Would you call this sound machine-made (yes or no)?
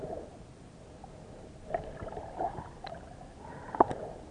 no